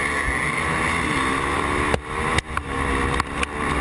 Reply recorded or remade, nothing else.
recorded